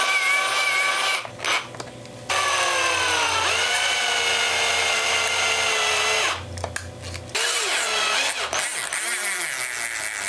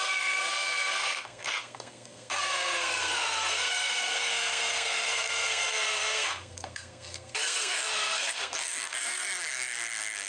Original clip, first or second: first